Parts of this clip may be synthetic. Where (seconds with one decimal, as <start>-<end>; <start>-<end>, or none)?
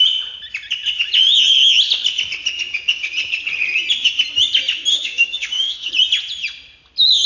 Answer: 4.9-5.9